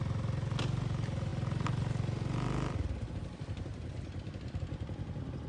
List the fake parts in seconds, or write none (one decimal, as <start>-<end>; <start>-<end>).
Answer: none